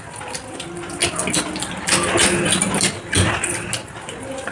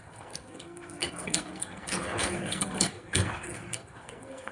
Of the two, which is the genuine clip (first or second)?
first